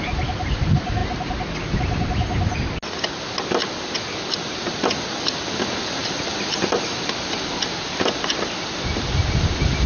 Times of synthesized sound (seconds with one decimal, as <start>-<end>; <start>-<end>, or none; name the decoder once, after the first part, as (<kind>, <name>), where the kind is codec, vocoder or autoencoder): none